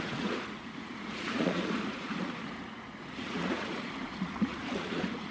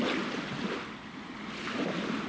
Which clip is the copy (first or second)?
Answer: first